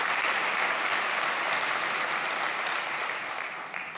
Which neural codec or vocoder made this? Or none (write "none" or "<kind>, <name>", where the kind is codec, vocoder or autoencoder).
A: none